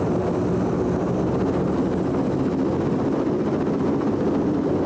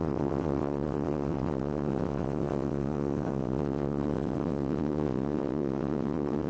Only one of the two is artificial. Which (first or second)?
second